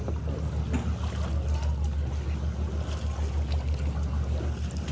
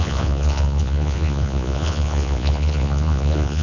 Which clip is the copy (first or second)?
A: second